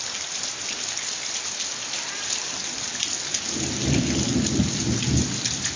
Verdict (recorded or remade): recorded